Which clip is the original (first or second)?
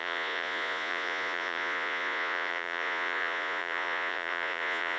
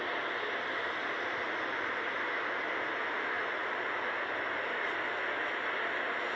second